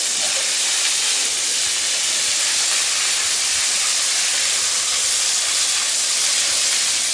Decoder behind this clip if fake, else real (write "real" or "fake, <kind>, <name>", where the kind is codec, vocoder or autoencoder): real